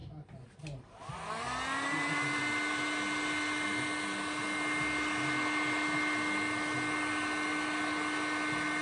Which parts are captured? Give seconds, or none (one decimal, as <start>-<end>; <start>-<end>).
0.0-8.8